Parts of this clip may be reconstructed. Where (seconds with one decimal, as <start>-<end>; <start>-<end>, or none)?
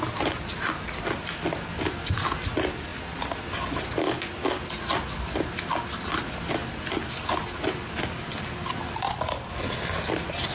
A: none